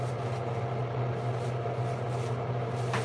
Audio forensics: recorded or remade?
recorded